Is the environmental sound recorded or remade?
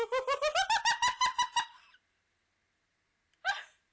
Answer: recorded